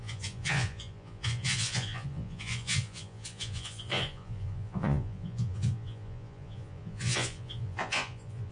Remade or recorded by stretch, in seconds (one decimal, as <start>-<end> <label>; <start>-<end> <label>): 0.0-8.5 remade